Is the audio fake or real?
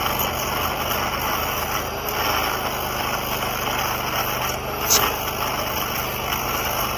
real